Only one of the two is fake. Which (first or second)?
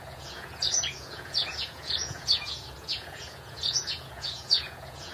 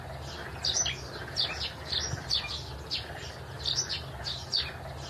first